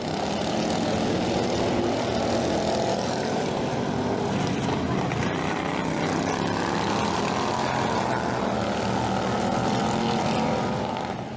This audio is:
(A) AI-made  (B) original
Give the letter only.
B